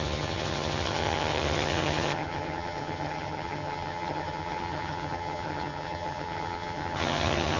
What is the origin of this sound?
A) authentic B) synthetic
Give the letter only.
B